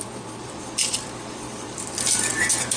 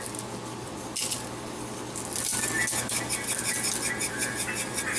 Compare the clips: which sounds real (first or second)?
second